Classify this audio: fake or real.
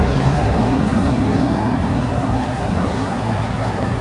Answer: fake